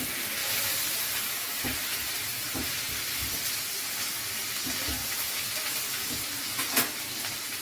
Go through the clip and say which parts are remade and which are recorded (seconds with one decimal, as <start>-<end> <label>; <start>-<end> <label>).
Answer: 0.0-3.2 remade; 3.2-7.1 recorded; 7.1-7.6 remade

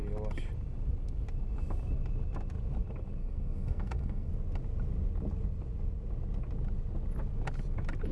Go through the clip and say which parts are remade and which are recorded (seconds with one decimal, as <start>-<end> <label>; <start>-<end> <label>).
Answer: 0.0-3.2 recorded; 3.2-4.3 remade; 4.3-8.1 recorded

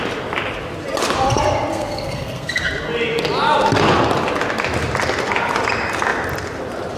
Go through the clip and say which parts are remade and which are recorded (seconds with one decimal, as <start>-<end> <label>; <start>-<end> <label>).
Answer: 0.0-1.7 recorded; 1.7-2.6 remade; 2.6-7.0 recorded

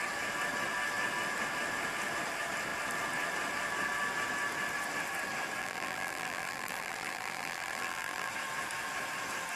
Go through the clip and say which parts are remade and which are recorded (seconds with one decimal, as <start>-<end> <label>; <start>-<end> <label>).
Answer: 0.0-5.6 recorded; 5.6-8.3 remade; 8.3-9.6 recorded

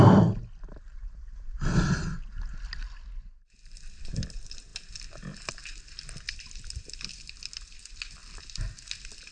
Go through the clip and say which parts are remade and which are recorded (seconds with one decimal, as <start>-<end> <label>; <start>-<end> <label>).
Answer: 0.0-9.3 recorded

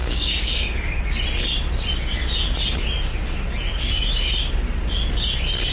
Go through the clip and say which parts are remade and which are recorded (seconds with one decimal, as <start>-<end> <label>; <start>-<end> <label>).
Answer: 0.0-1.0 remade; 1.0-5.7 recorded

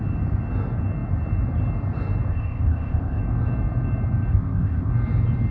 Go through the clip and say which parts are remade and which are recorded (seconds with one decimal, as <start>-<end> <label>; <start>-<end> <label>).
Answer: 0.0-2.3 recorded; 2.3-3.2 remade; 3.2-4.3 recorded; 4.3-4.9 remade; 4.9-5.5 recorded

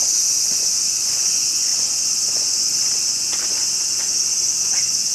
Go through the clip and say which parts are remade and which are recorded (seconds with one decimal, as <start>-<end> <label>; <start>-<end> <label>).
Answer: 0.0-5.1 remade